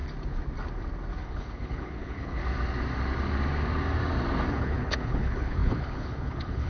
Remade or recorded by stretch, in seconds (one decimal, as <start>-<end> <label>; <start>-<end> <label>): 0.0-1.2 recorded; 1.2-2.4 remade; 2.4-4.5 recorded; 4.5-6.7 remade